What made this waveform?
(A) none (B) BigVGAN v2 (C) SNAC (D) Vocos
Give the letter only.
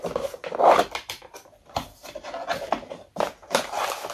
A